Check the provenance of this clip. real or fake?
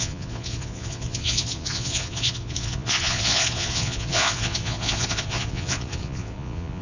fake